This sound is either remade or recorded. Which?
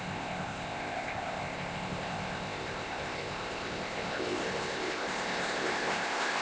remade